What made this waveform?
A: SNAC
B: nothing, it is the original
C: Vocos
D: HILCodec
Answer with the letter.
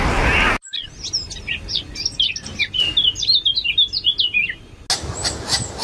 B